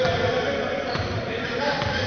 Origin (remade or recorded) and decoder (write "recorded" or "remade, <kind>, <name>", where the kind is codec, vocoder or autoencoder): recorded